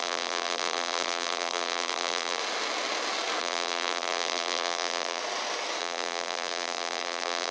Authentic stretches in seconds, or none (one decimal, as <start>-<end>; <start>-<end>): 2.4-3.4; 5.2-5.8